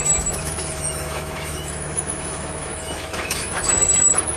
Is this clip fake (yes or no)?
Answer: yes